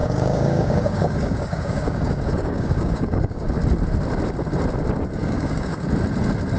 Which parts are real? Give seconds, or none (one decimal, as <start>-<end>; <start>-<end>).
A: 3.5-5.2; 5.9-6.6